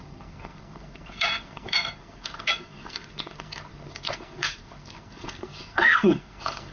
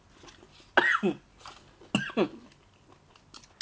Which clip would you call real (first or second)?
second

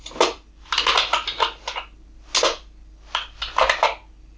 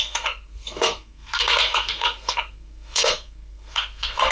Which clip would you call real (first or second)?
first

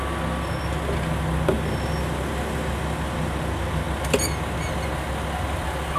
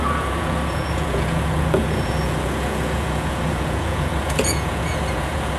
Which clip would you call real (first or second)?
first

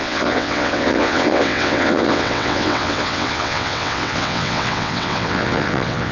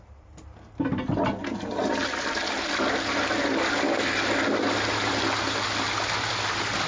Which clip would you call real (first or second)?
second